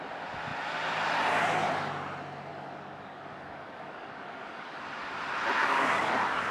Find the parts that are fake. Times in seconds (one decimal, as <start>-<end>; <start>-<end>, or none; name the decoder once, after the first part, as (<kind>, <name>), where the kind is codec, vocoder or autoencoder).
2.5-4.8 (codec, DAC); 5.6-6.5

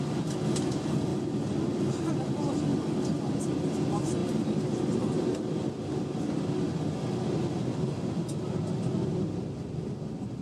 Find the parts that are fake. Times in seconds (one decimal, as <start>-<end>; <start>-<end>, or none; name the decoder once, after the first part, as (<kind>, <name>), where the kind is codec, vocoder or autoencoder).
none